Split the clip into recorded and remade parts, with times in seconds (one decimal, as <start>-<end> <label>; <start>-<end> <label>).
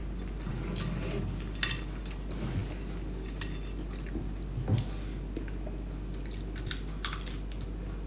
0.0-8.1 recorded